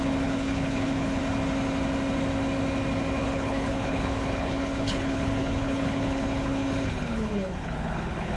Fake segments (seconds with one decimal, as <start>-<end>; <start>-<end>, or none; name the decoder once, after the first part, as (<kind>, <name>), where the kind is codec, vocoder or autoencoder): 0.0-1.2 (codec, HILCodec); 3.2-8.4